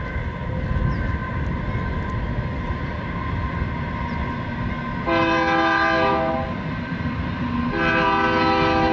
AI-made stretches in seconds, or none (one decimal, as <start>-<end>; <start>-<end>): none